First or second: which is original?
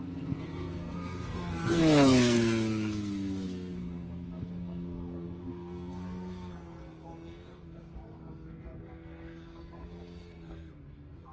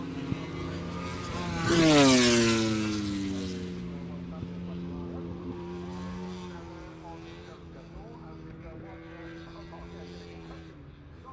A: second